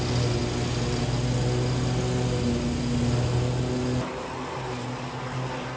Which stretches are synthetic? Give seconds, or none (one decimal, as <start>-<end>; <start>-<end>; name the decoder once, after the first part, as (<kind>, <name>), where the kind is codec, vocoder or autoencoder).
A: none